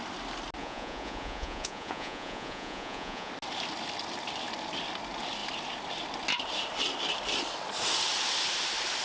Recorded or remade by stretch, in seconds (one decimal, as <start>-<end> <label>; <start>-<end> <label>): 0.0-0.6 recorded; 0.6-3.3 remade; 3.3-9.0 recorded